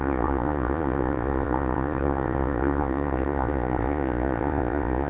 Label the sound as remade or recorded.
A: remade